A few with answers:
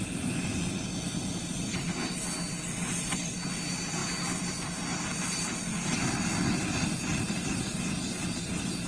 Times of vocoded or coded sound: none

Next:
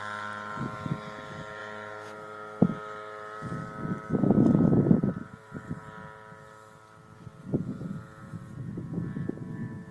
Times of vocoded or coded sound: 5.0-5.8 (vocoder, BigVGAN v2)